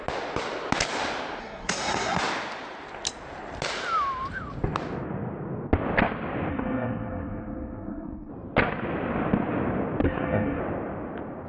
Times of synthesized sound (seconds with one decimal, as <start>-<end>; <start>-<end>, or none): 1.4-2.2; 6.5-8.3; 10.0-10.6